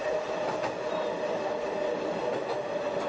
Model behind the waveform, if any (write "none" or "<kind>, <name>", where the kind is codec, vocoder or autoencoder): none